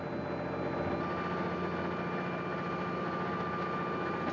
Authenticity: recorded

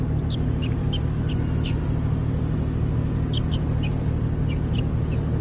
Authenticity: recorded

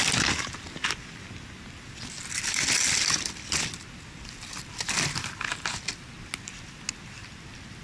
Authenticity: recorded